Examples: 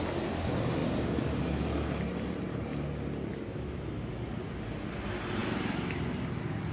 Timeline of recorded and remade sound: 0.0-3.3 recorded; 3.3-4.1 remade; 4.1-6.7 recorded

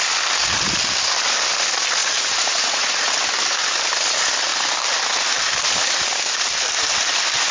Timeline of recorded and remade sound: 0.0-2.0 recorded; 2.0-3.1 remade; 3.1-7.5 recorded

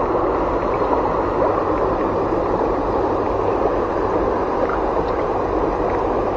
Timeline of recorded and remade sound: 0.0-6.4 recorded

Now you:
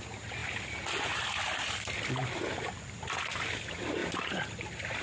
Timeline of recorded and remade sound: 0.0-0.4 recorded; 0.4-2.9 remade; 2.9-4.0 recorded; 4.0-4.6 remade; 4.6-5.0 recorded

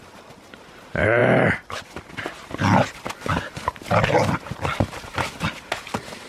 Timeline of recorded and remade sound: 0.0-6.3 recorded

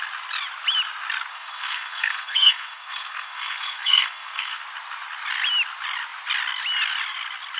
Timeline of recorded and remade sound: 0.0-1.3 recorded; 1.3-4.6 remade; 4.6-7.6 recorded